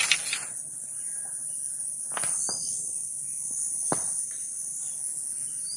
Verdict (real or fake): real